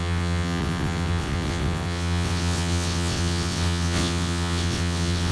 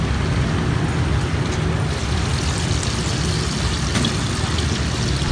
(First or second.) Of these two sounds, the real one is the second